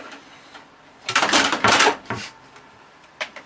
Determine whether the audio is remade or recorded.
remade